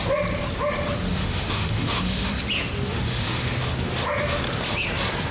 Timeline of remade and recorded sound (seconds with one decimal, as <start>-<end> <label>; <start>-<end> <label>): 0.0-1.1 recorded; 1.1-2.4 remade; 2.4-2.9 recorded; 2.9-3.5 remade; 3.5-5.3 recorded

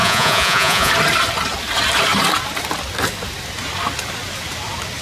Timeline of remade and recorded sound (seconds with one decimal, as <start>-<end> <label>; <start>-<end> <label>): 0.0-0.9 remade; 0.9-5.0 recorded

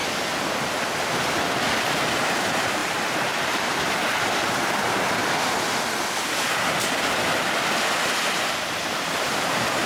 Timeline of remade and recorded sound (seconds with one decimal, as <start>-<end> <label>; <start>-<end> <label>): 0.0-1.9 recorded; 1.9-5.2 remade; 5.2-8.0 recorded; 8.0-9.9 remade

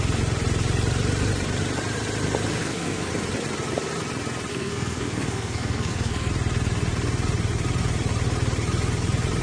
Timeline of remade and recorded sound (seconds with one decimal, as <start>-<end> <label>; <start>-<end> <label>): 0.0-2.6 recorded; 2.6-3.1 remade; 3.1-4.5 recorded; 4.5-6.3 remade; 6.3-9.4 recorded